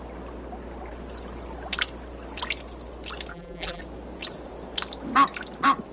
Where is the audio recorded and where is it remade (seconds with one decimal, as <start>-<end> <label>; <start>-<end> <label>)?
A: 0.0-3.3 recorded; 3.3-3.8 remade; 3.8-5.9 recorded

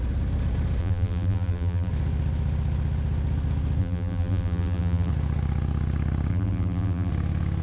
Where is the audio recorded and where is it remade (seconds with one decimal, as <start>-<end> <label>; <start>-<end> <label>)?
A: 0.0-0.8 recorded; 0.8-1.9 remade; 1.9-3.8 recorded; 3.8-5.1 remade; 5.1-6.3 recorded; 6.3-7.1 remade; 7.1-7.6 recorded

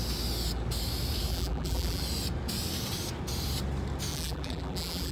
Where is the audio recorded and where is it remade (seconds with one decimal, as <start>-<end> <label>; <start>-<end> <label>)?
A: 0.0-1.3 recorded; 1.3-2.0 remade; 2.0-4.1 recorded; 4.1-5.1 remade

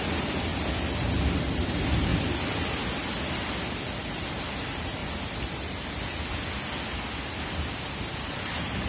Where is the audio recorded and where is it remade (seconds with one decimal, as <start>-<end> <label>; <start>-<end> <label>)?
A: 0.0-0.5 remade; 0.5-1.5 recorded; 1.5-2.1 remade; 2.1-4.1 recorded; 4.1-5.0 remade; 5.0-7.9 recorded; 7.9-8.9 remade

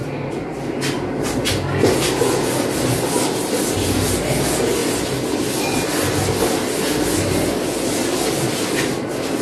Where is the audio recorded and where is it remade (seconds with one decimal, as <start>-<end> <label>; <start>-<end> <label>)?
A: 0.0-2.7 remade; 2.7-9.4 recorded